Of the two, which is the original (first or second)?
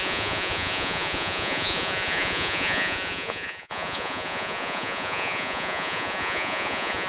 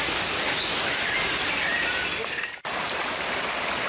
second